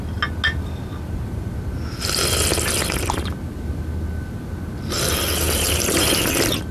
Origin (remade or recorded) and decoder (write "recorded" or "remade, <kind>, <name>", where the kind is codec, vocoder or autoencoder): recorded